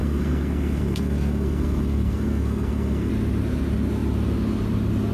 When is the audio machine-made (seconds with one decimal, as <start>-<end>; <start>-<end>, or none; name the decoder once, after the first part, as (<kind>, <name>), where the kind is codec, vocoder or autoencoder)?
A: 0.0-3.1 (codec, SNAC)